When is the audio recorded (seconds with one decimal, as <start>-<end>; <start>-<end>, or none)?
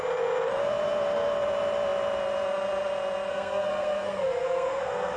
0.0-3.3